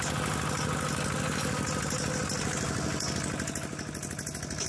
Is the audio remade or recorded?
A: recorded